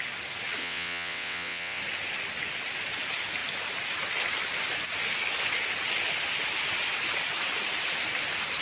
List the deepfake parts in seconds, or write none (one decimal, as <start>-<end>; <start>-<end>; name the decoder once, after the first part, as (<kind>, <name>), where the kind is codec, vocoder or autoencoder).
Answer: 0.6-1.8 (vocoder, WaveNeXt)